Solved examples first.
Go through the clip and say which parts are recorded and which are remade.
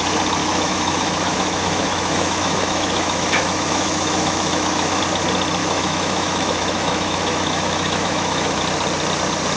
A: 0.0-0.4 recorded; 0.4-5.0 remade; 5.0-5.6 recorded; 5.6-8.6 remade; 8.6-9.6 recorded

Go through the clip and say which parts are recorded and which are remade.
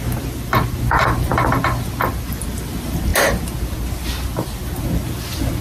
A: 0.0-5.6 recorded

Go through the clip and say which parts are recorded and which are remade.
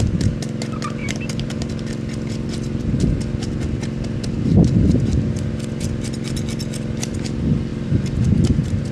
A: 0.0-1.0 recorded; 1.0-1.7 remade; 1.7-7.7 recorded; 7.7-8.9 remade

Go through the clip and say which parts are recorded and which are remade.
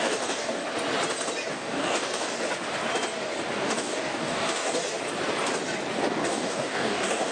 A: 0.0-0.6 remade; 0.6-1.5 recorded; 1.5-2.3 remade; 2.3-3.5 recorded; 3.5-4.8 remade; 4.8-6.1 recorded; 6.1-7.3 remade